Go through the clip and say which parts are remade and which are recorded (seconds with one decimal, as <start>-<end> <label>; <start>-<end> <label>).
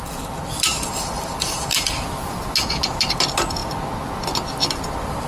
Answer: 0.0-0.7 recorded; 0.7-1.7 remade; 1.7-5.3 recorded